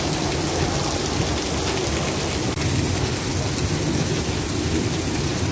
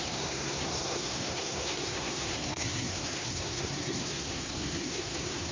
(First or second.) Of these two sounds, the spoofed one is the second